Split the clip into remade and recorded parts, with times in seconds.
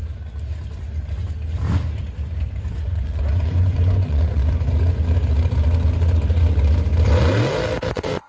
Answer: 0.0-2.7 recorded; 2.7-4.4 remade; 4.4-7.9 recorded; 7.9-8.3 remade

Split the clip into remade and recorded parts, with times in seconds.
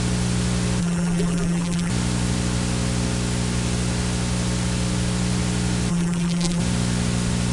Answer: 0.0-0.8 recorded; 0.8-1.9 remade; 1.9-5.9 recorded; 5.9-6.6 remade; 6.6-7.5 recorded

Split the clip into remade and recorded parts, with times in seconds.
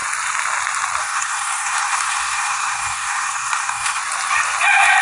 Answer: 0.0-1.0 recorded; 1.0-4.0 remade; 4.0-5.0 recorded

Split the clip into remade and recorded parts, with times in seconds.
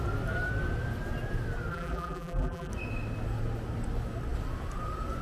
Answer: 0.0-1.7 recorded; 1.7-2.7 remade; 2.7-5.2 recorded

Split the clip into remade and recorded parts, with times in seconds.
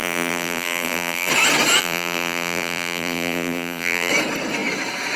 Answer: 0.0-1.3 remade; 1.3-1.8 recorded; 1.8-4.1 remade; 4.1-5.2 recorded